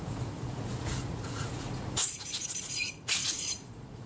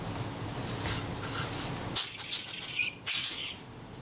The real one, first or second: second